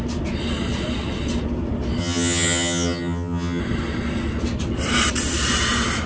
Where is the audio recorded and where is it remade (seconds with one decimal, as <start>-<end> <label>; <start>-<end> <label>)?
0.0-2.0 recorded; 2.0-3.6 remade; 3.6-6.1 recorded